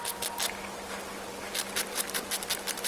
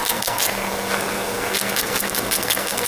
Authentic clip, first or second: first